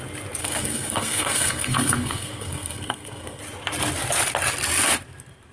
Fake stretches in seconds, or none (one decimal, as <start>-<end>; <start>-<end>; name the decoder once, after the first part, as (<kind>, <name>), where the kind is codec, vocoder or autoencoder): 0.4-3.4 (codec, SNAC)